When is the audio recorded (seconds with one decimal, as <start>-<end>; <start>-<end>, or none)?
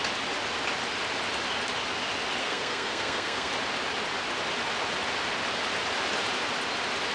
0.0-2.4; 3.5-7.1